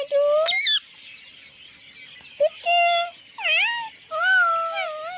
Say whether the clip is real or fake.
real